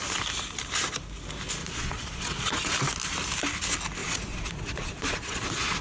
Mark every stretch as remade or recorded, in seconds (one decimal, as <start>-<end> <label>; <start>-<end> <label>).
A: 0.0-1.6 recorded; 1.6-2.7 remade; 2.7-4.0 recorded; 4.0-5.8 remade